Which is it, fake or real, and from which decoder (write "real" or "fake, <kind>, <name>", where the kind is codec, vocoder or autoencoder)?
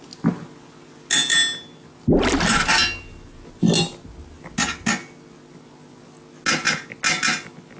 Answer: real